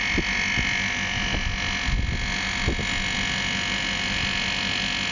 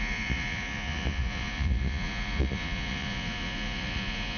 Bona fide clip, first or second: first